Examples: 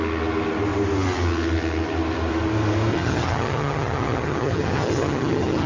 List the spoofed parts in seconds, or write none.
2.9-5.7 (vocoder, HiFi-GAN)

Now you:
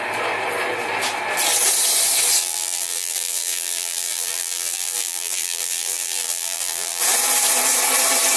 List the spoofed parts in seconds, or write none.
2.4-7.0 (vocoder, BigVGAN v2)

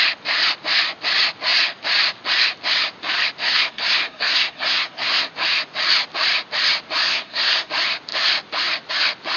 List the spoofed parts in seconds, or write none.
3.4-5.3 (codec, SNAC); 7.0-7.7